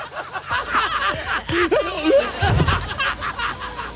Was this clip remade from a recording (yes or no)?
no